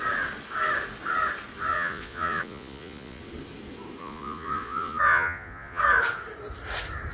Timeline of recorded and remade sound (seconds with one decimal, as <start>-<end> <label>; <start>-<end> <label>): 0.0-1.7 recorded; 1.7-3.2 remade; 3.2-4.0 recorded; 4.0-5.8 remade; 5.8-7.1 recorded